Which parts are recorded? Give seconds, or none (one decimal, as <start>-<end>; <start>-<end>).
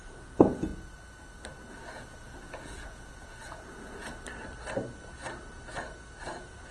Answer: 0.7-1.7; 4.1-6.2